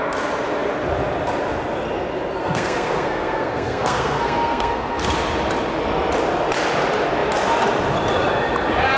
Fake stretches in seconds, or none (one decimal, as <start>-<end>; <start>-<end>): 2.4-5.0